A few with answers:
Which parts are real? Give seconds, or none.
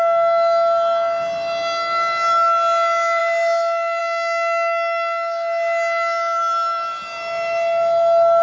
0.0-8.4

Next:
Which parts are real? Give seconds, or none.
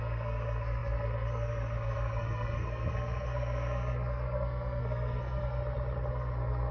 5.6-6.1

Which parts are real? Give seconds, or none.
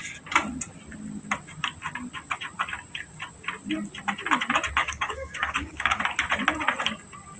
0.0-4.8; 6.0-7.4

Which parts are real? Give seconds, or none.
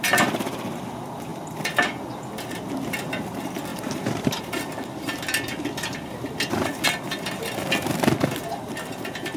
0.0-3.7; 4.4-9.4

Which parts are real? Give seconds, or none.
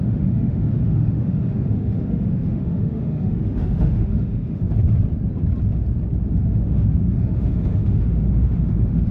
4.6-6.4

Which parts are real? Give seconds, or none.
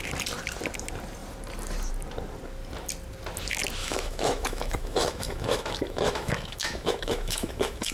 0.0-3.8